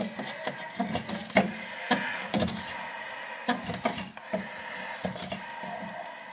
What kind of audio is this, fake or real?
real